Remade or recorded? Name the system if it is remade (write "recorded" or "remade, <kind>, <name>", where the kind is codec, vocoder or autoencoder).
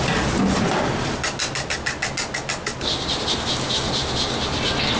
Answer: recorded